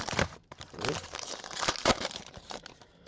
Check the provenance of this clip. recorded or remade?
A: remade